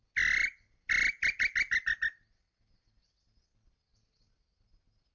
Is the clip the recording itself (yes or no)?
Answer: yes